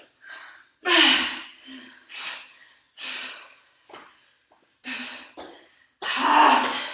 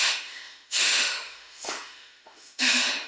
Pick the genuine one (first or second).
first